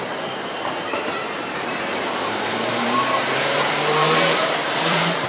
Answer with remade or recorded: remade